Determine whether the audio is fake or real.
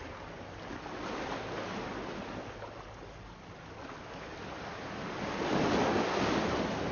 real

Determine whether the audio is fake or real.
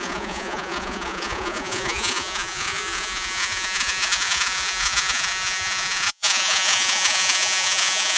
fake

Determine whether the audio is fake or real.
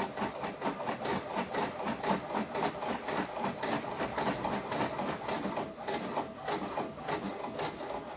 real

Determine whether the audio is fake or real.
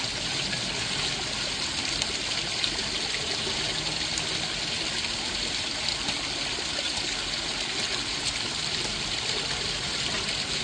real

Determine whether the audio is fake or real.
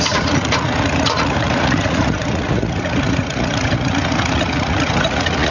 fake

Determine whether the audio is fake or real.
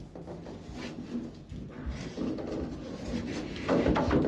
real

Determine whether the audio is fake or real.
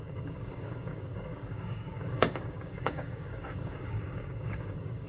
fake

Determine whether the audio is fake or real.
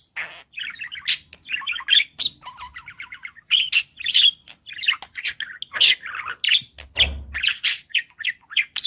real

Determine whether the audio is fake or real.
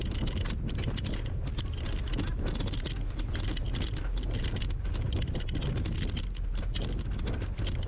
real